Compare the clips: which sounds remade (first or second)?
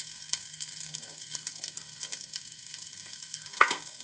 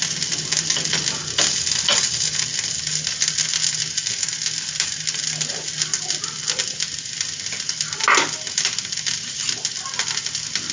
first